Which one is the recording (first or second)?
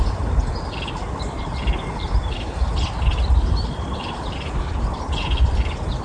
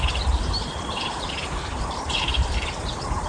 first